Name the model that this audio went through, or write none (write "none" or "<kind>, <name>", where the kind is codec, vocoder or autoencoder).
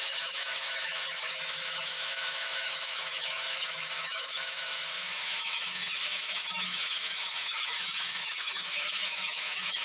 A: autoencoder, DAC-VAE